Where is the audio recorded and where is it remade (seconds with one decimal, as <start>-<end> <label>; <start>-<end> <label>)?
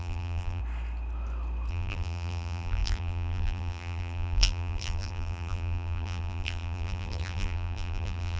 0.0-0.6 remade; 0.6-1.7 recorded; 1.7-8.4 remade